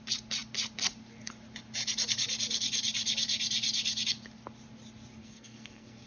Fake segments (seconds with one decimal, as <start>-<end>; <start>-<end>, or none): 5.2-6.1